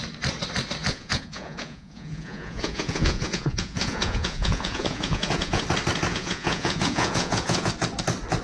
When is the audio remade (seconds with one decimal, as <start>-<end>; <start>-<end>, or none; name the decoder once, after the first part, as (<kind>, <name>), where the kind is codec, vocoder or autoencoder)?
0.8-5.6 (vocoder, Vocos); 6.1-7.7